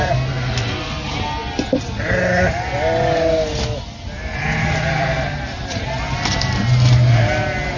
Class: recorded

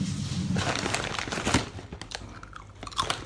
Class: recorded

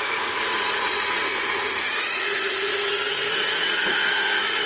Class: remade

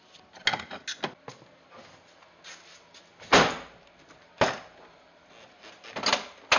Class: recorded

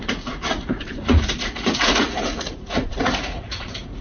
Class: remade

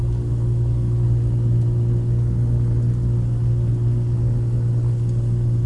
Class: recorded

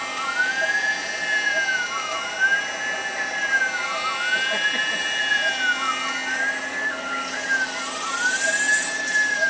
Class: recorded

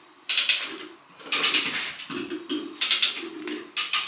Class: recorded